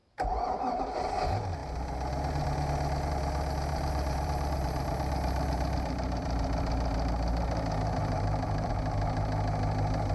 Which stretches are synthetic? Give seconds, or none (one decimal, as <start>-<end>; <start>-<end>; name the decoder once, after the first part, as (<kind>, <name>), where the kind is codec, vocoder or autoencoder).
0.0-0.8 (vocoder, BigVGAN v2); 3.7-8.7